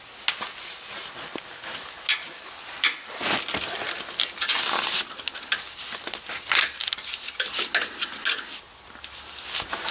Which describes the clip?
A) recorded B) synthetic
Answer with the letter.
A